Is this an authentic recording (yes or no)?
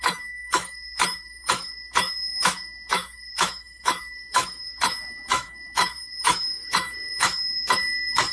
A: no